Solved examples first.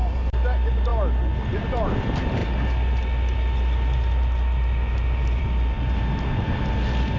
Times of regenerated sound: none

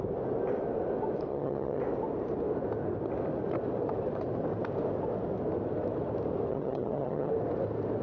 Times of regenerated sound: 1.3-1.8 (vocoder, HiFi-GAN); 6.5-7.3

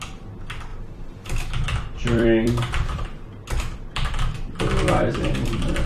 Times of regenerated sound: 0.7-4.2 (vocoder, BigVGAN v2)